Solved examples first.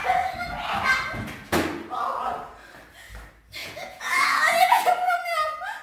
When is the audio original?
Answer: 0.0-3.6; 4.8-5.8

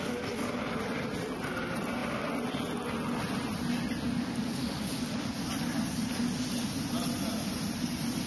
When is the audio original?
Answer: 0.0-8.3

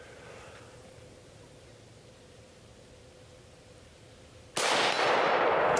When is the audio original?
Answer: 1.7-5.2

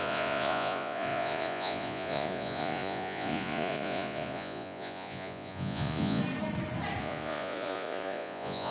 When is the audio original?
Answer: 6.2-7.0

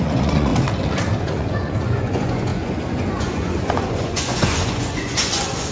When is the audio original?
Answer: 0.5-1.2